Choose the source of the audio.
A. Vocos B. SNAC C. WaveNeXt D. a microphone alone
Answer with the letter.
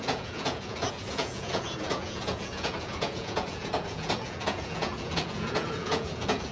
A